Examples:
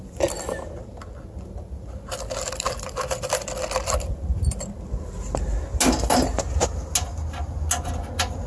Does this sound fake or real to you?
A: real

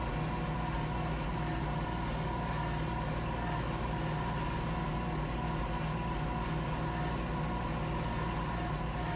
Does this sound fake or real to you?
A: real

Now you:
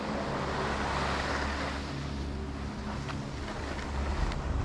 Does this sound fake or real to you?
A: real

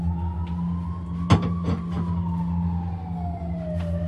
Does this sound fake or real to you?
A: real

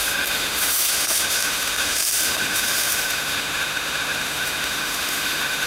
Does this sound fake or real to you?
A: fake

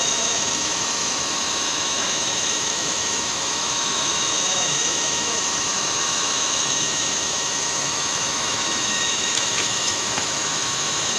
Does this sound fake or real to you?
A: fake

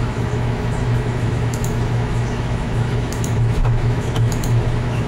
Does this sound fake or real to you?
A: fake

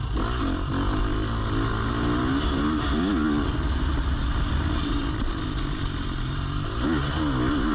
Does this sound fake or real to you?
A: real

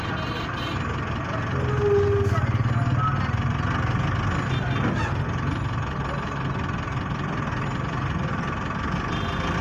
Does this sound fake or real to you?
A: real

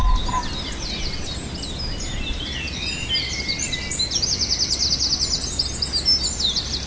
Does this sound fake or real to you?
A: real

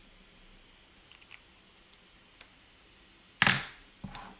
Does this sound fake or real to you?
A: real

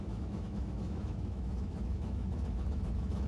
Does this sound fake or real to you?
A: fake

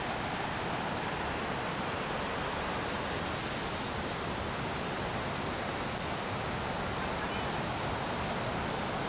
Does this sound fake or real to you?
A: real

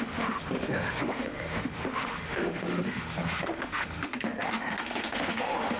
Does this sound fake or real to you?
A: fake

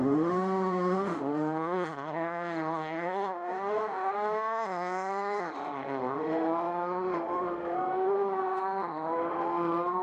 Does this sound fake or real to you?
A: fake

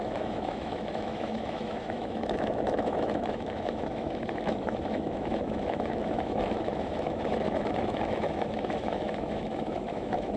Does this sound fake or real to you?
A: fake